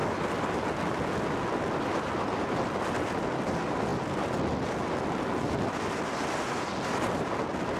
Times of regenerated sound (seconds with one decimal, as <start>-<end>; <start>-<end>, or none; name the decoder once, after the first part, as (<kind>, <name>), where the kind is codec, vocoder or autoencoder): none